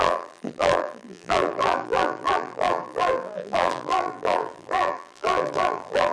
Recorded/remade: remade